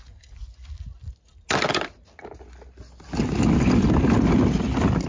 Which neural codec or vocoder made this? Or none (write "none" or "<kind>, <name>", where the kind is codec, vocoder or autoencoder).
none